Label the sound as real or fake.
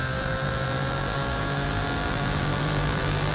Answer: fake